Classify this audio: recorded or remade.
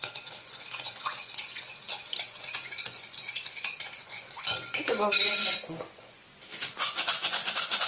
remade